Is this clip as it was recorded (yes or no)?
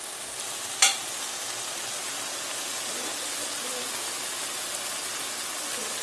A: yes